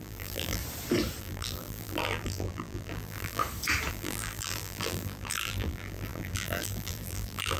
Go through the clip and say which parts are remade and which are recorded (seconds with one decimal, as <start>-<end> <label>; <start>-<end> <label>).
0.0-0.6 remade; 0.6-1.2 recorded; 1.2-3.4 remade; 3.4-3.9 recorded; 3.9-7.6 remade